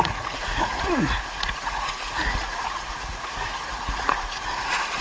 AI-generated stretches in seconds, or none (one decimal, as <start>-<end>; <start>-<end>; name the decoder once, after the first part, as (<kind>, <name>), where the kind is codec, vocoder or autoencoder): 0.0-5.0 (vocoder, Vocos)